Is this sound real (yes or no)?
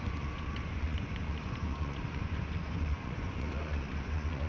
no